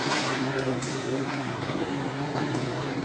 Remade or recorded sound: remade